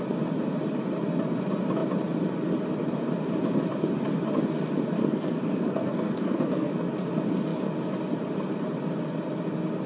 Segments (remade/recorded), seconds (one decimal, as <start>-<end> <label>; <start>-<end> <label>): 0.0-5.0 recorded; 5.0-6.7 remade; 6.7-9.9 recorded